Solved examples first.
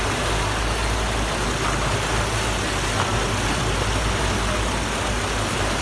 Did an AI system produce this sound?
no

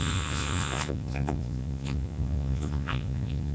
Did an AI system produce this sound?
yes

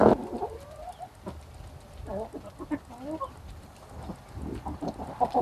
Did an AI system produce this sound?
no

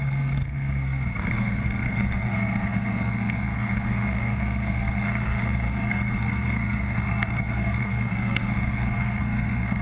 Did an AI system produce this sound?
yes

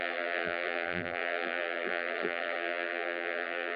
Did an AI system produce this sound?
yes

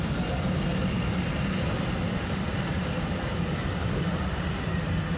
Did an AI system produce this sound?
no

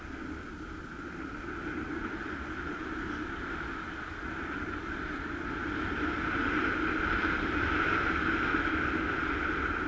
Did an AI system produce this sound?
no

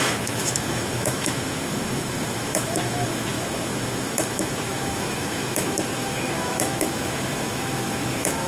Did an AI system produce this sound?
yes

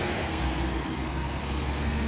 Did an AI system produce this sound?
yes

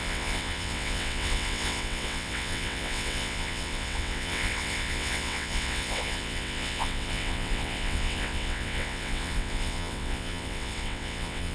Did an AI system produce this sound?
yes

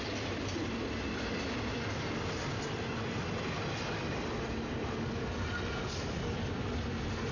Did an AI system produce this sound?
no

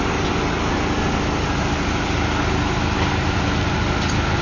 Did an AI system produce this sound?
no